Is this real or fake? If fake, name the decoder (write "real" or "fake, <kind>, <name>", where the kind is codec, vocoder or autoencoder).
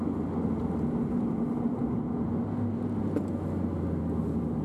real